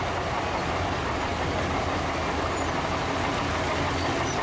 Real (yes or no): yes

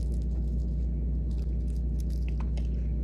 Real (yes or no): yes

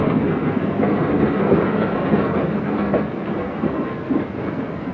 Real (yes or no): no